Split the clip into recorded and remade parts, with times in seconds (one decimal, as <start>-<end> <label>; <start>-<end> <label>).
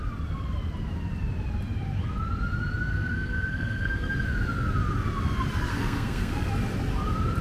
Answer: 0.0-2.9 recorded; 2.9-4.1 remade; 4.1-5.7 recorded; 5.7-6.5 remade; 6.5-7.4 recorded